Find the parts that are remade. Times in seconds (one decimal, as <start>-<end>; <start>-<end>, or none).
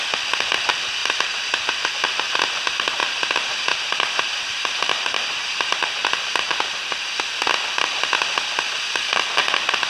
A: 1.0-1.9; 3.0-7.1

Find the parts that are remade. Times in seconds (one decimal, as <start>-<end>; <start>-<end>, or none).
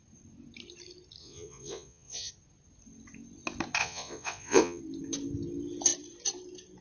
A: 1.2-2.3; 3.8-4.8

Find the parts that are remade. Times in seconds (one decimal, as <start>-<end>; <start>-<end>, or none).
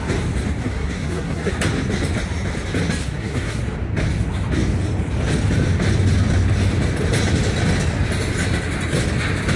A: 0.6-1.5; 3.0-3.6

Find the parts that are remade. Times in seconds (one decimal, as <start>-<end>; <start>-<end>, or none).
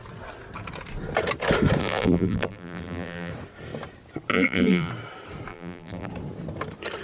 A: 1.8-3.3; 4.3-4.9; 5.5-6.1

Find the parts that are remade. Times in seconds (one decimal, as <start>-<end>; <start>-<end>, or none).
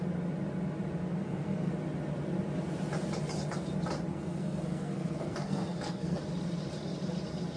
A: 1.1-1.7; 4.1-6.2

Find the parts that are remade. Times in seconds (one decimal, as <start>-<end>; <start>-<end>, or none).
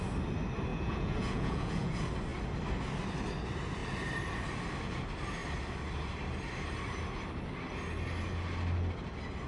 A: 0.7-1.9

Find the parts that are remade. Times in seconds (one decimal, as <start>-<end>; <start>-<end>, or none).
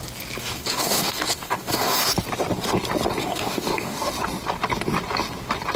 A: 0.4-2.1; 3.2-4.1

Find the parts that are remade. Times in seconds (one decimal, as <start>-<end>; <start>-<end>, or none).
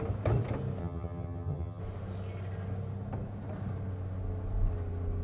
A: 0.8-1.8